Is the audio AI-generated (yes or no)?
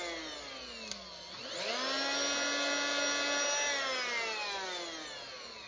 no